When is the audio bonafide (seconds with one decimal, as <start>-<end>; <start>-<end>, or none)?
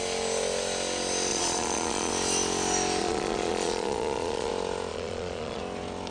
0.0-1.3; 2.1-3.0; 4.5-4.9; 5.6-6.1